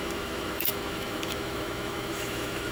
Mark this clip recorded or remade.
remade